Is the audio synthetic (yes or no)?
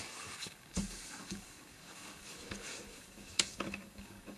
yes